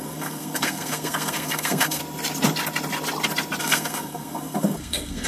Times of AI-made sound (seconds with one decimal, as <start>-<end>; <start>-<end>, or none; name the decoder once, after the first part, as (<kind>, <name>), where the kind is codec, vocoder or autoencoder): 0.0-2.0 (codec, SNAC); 3.6-5.3